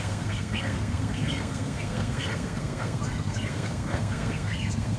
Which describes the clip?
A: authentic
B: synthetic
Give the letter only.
B